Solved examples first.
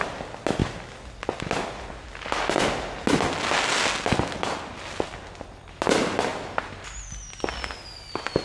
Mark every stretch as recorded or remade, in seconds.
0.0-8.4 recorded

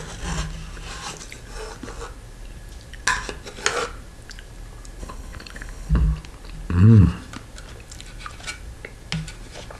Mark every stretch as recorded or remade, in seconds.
0.0-5.0 recorded; 5.0-5.9 remade; 5.9-9.8 recorded

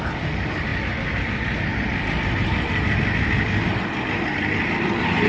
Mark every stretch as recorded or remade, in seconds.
0.0-5.3 recorded